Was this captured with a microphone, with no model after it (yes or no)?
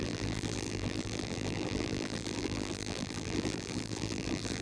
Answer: no